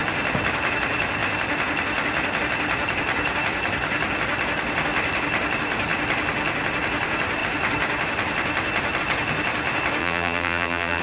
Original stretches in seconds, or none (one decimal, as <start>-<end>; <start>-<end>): 0.0-10.0